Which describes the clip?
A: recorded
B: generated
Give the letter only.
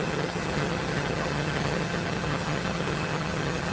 B